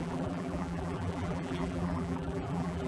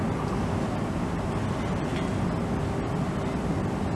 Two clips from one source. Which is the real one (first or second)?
second